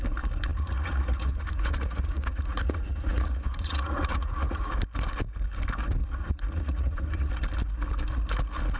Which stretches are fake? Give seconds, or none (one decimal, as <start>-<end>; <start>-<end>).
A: 0.5-4.7; 6.0-7.3